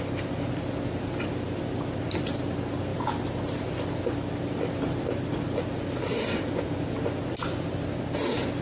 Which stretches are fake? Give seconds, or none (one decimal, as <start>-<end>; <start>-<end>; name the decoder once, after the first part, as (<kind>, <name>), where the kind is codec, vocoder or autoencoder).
none